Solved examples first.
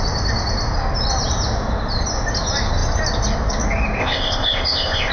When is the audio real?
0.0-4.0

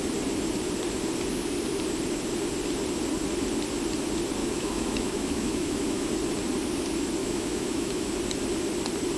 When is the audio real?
0.0-4.4; 6.1-7.2; 8.1-9.2

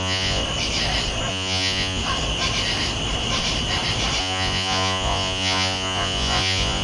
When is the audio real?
0.4-1.3; 2.0-4.2

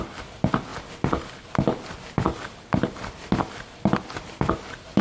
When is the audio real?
0.0-5.0

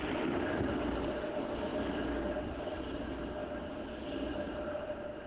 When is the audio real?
0.0-5.3

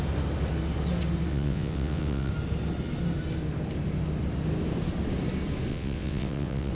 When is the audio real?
0.0-1.3; 2.3-5.7

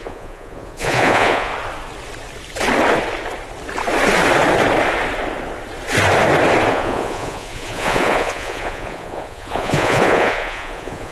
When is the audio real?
1.5-6.7